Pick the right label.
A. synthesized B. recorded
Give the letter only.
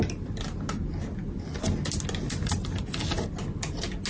B